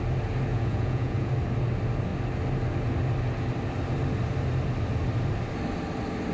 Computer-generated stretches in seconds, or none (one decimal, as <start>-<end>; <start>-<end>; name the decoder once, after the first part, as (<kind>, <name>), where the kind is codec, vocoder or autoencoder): 0.5-1.3 (vocoder, Vocos)